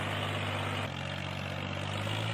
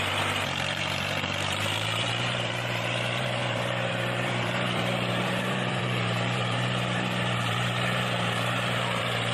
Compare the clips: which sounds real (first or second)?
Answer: first